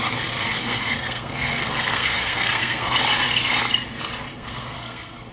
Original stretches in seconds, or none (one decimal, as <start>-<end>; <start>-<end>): 0.0-0.6; 3.0-4.3